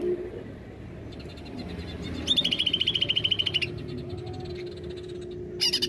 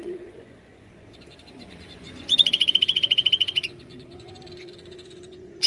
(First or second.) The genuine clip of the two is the first